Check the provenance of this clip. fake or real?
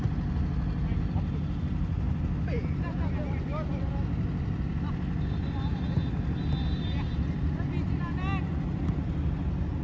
real